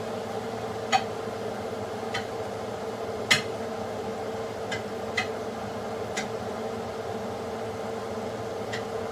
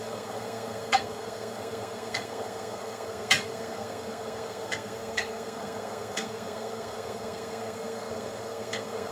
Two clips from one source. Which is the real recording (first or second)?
first